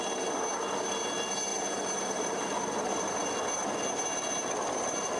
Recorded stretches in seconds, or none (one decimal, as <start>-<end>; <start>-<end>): 0.0-5.2